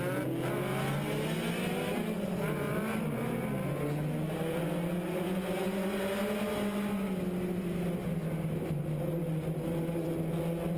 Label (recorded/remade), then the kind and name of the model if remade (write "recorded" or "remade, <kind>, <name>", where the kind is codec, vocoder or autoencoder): recorded